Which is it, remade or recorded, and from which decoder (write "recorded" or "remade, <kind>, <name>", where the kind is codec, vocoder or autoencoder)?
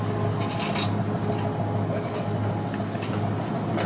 recorded